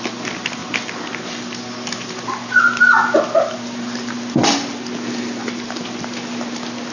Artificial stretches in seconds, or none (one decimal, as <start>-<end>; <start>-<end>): none